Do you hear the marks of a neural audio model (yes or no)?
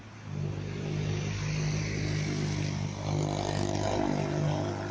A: no